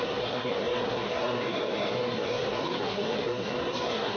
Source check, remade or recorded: remade